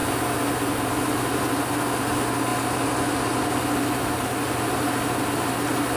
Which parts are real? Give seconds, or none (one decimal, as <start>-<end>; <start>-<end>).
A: 0.0-6.0

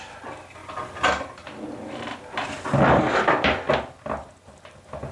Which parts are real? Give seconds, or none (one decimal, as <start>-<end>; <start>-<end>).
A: 0.0-5.1

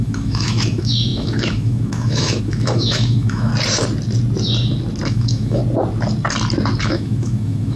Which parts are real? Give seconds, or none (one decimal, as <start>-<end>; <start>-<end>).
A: 3.5-5.1; 5.6-6.8

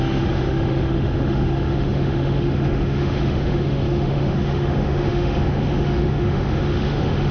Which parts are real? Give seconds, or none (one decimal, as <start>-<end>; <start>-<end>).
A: none

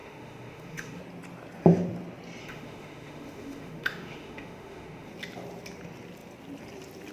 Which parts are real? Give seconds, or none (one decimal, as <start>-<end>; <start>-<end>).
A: 1.0-2.4; 5.1-7.1

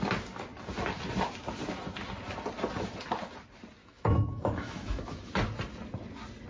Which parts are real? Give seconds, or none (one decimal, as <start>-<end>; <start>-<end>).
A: 0.0-3.8; 5.3-6.5